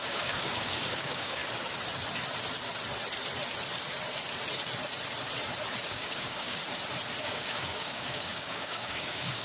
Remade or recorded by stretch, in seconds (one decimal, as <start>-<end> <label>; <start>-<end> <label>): 0.0-1.4 remade; 1.4-5.9 recorded; 5.9-6.6 remade; 6.6-7.2 recorded; 7.2-9.4 remade